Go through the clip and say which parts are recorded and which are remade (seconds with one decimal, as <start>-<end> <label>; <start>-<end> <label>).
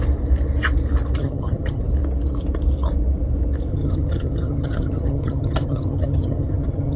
0.0-1.2 recorded; 1.2-1.8 remade; 1.8-3.7 recorded; 3.7-7.0 remade